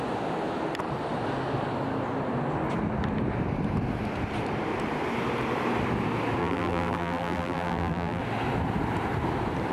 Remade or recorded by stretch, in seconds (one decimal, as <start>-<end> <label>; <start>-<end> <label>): 0.0-6.4 recorded; 6.4-8.2 remade; 8.2-9.7 recorded